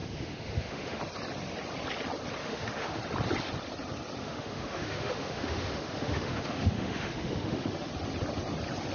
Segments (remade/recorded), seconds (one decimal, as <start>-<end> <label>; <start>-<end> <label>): 0.0-1.0 remade; 1.0-2.4 recorded; 2.4-3.0 remade; 3.0-4.2 recorded; 4.2-7.9 remade; 7.9-8.9 recorded